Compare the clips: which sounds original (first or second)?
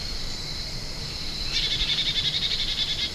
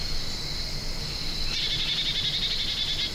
second